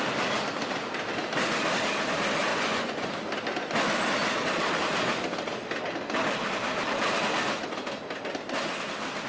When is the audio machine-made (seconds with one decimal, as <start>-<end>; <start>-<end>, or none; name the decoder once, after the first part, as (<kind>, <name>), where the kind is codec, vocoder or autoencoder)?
2.5-3.1 (vocoder, Vocos)